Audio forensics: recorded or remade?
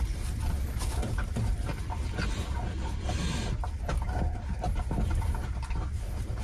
recorded